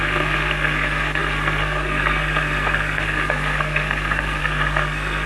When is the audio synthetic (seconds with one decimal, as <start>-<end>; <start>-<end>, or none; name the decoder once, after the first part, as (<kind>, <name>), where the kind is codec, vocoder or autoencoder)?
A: 0.0-5.3 (codec, SNAC)